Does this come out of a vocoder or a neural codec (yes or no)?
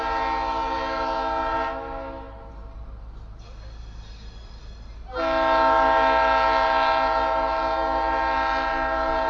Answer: no